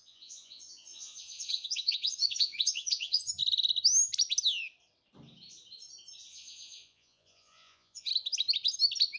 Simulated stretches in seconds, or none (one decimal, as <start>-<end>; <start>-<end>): 0.0-3.4; 6.3-8.1